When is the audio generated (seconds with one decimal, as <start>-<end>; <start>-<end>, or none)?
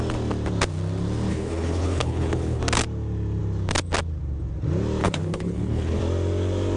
1.3-2.6; 5.0-6.0